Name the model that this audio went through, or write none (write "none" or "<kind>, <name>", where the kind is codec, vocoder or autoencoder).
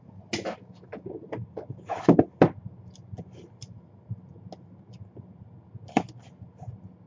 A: none